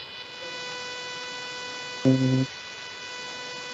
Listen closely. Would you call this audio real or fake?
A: real